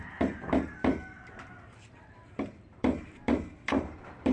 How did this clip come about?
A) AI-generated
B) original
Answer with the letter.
A